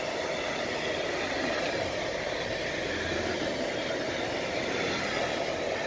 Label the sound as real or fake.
real